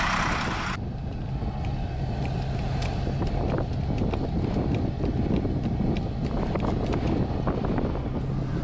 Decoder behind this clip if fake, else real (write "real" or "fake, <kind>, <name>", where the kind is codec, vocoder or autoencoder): real